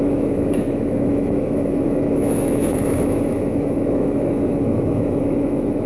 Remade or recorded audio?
remade